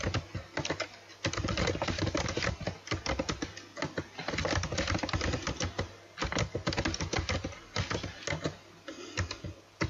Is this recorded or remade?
recorded